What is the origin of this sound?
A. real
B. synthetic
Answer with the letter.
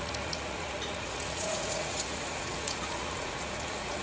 B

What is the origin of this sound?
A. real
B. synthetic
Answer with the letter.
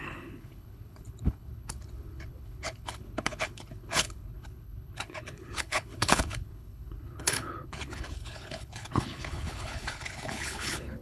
B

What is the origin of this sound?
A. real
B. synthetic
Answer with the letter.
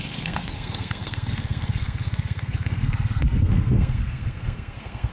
B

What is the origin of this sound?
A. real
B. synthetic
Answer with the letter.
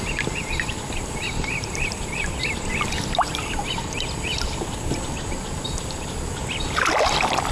A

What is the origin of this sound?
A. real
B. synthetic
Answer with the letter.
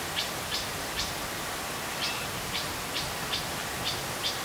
A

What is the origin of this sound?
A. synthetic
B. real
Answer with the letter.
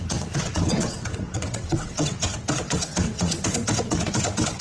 A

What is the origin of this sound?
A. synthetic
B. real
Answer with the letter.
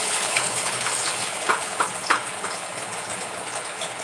A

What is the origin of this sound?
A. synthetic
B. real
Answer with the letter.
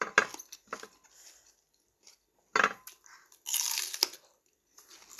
B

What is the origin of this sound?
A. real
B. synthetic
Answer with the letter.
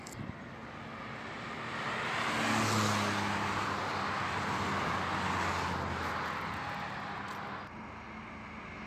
A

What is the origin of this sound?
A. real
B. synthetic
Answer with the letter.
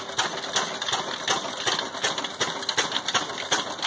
A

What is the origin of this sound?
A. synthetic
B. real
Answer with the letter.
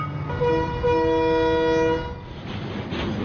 B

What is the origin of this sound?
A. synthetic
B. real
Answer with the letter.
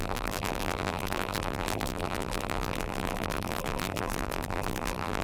A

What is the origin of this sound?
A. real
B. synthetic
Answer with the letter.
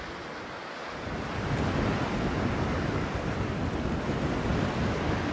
A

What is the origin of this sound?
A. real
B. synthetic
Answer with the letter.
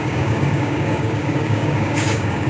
B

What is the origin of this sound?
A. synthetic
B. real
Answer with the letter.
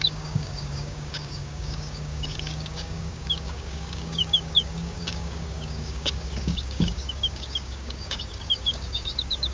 A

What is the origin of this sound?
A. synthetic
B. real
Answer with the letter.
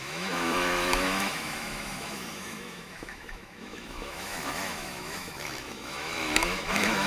A